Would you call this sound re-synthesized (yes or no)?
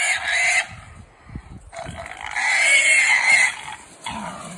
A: no